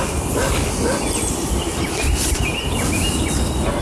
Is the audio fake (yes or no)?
no